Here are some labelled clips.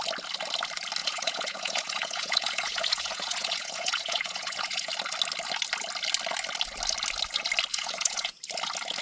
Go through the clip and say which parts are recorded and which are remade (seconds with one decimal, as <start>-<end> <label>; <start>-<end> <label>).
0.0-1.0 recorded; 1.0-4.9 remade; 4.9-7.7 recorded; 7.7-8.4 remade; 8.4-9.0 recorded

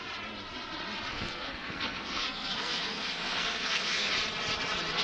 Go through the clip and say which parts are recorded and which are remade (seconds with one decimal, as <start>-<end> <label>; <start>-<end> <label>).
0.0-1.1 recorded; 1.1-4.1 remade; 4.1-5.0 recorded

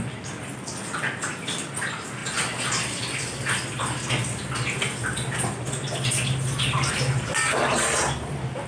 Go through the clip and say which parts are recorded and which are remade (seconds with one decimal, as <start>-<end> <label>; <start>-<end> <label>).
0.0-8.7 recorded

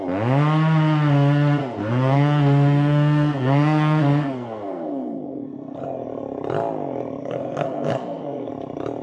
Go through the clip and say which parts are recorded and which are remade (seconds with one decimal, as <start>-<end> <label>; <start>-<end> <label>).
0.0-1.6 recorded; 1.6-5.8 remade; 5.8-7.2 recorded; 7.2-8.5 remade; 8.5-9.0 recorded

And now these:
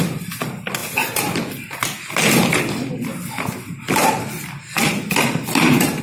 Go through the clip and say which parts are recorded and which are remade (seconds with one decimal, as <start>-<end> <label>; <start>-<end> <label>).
0.0-6.0 recorded

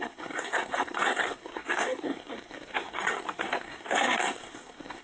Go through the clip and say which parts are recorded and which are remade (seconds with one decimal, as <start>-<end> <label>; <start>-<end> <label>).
0.0-5.0 remade

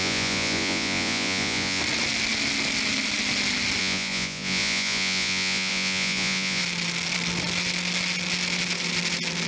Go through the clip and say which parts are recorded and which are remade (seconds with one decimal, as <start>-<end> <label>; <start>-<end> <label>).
0.0-1.8 remade; 1.8-3.8 recorded; 3.8-6.6 remade; 6.6-9.5 recorded